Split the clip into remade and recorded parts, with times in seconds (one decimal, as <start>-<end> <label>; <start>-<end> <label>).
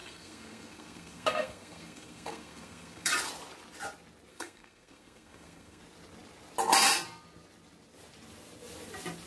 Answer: 0.0-3.1 remade; 3.1-4.3 recorded; 4.3-5.8 remade; 5.8-9.3 recorded